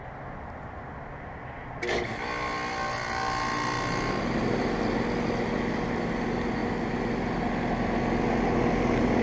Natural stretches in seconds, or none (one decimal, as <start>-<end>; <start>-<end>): 0.0-9.2